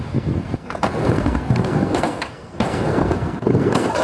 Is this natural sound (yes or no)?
no